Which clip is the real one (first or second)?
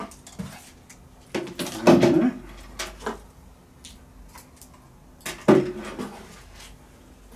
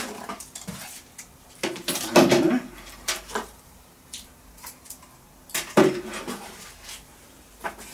first